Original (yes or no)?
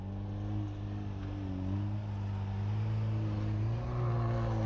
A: yes